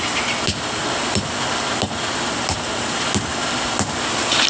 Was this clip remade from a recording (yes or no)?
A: no